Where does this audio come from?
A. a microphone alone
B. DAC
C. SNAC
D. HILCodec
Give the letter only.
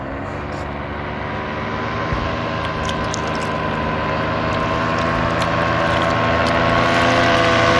A